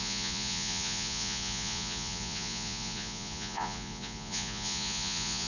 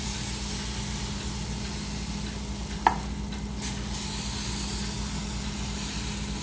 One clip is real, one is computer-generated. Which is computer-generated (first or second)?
first